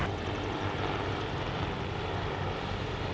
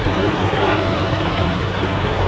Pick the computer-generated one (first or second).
second